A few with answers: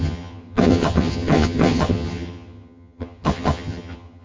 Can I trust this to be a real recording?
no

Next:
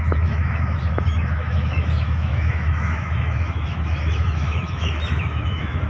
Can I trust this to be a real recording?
no